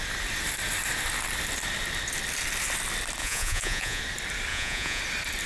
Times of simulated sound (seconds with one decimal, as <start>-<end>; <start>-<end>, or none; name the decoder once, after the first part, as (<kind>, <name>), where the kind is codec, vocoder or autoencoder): 3.2-4.0 (vocoder, Vocos); 4.5-5.0